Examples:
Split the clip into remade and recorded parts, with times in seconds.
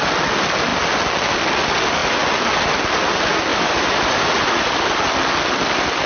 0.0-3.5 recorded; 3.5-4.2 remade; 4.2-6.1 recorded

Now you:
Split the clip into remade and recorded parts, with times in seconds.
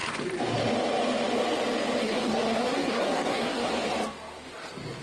0.0-2.0 recorded; 2.0-3.7 remade; 3.7-5.0 recorded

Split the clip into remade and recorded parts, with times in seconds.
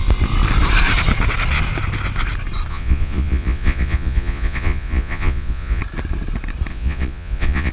0.0-2.7 recorded; 2.7-5.8 remade; 5.8-6.7 recorded; 6.7-7.7 remade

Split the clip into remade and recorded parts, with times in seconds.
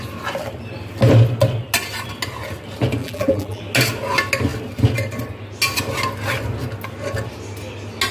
0.0-3.0 recorded; 3.0-3.6 remade; 3.6-8.1 recorded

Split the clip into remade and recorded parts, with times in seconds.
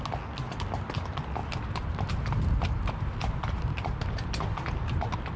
0.0-1.4 recorded; 1.4-4.1 remade; 4.1-5.4 recorded